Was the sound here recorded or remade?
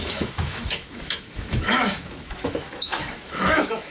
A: remade